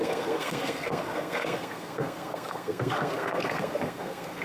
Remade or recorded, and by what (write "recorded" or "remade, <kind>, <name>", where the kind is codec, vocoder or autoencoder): remade, codec, SNAC